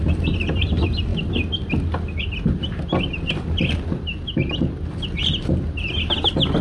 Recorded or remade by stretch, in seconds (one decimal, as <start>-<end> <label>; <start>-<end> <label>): 0.0-6.6 recorded